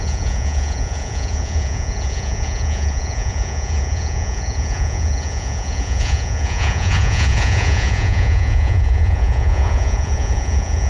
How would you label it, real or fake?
fake